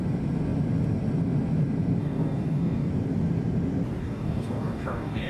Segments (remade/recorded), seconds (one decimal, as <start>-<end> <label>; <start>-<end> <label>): 0.0-2.0 recorded; 2.0-2.9 remade; 2.9-4.0 recorded; 4.0-5.3 remade